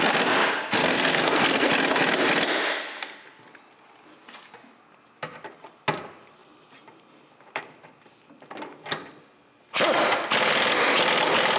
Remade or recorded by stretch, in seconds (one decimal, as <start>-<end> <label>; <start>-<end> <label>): 0.0-0.8 recorded; 0.8-1.7 remade; 1.7-11.6 recorded